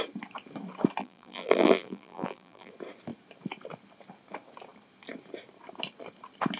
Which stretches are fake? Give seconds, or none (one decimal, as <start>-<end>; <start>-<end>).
1.0-2.7